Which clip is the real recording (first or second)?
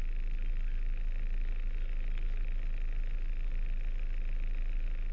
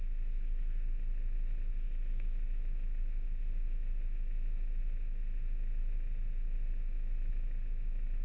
first